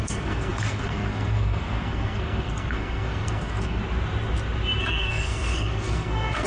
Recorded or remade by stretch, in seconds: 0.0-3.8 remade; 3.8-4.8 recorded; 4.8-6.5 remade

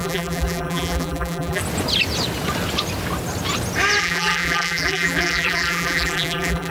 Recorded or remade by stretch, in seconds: 0.0-1.6 remade; 1.6-4.0 recorded; 4.0-6.7 remade

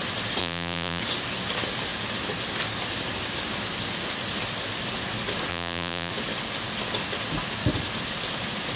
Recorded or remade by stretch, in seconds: 0.0-0.4 recorded; 0.4-1.0 remade; 1.0-5.5 recorded; 5.5-6.1 remade; 6.1-8.8 recorded

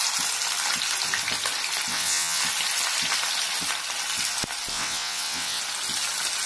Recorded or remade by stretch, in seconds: 0.0-1.9 recorded; 1.9-2.4 remade; 2.4-4.7 recorded; 4.7-5.6 remade; 5.6-6.5 recorded

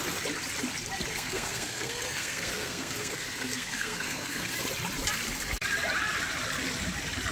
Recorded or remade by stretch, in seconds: 0.0-1.1 recorded; 1.1-4.5 remade; 4.5-7.3 recorded

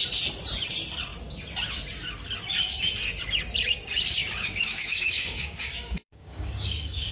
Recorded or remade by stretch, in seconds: 0.0-4.2 recorded; 4.2-7.1 remade

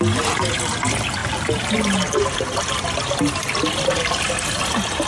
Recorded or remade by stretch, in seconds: 0.0-5.1 recorded